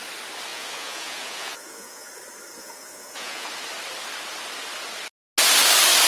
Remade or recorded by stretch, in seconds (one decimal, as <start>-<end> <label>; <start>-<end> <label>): 0.0-0.5 recorded; 0.5-2.1 remade; 2.1-2.6 recorded; 2.6-3.5 remade; 3.5-6.1 recorded